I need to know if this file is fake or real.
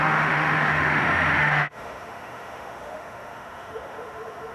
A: fake